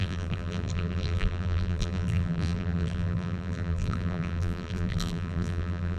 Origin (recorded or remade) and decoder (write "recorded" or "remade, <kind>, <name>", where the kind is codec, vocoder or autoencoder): remade, vocoder, BigVGAN v2